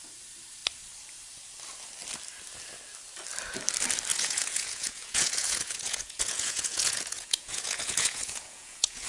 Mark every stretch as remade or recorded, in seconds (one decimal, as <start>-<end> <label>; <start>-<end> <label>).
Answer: 0.0-4.1 recorded; 4.1-9.1 remade